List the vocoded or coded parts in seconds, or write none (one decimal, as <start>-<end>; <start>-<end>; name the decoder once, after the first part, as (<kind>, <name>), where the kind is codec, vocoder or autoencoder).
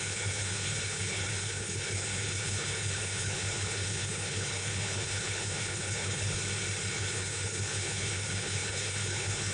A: 0.0-6.4 (codec, HILCodec); 6.9-9.5